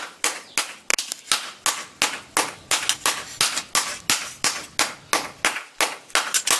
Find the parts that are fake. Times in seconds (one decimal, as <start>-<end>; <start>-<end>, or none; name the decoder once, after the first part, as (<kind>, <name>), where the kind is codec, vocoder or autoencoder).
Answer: none